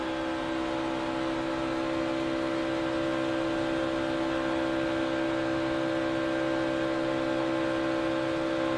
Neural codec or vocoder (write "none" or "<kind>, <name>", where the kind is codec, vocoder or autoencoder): none